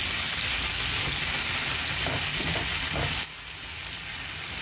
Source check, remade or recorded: recorded